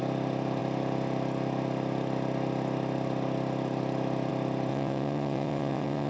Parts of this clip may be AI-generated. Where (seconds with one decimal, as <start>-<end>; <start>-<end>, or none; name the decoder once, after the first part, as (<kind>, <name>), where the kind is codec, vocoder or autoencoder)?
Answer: 4.7-6.1 (vocoder, WaveNeXt)